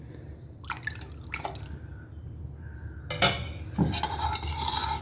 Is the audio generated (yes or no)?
no